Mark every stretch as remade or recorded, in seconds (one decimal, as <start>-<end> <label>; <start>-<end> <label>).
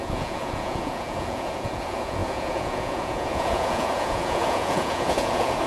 0.0-5.7 remade